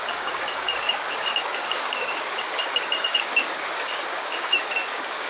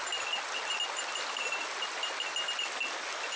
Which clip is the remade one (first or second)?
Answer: first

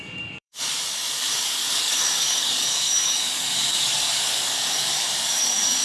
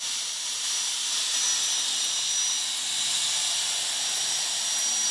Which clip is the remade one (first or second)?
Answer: first